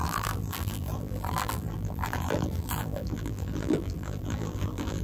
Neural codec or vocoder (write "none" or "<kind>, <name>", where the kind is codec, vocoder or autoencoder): vocoder, BigVGAN v2